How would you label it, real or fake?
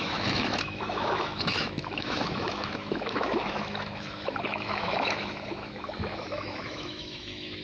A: fake